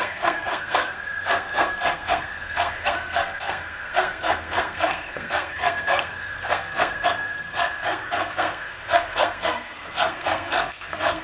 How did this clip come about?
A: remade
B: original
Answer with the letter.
A